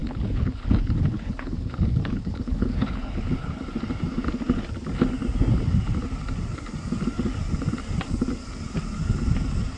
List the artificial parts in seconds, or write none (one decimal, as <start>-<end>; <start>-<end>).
0.0-3.6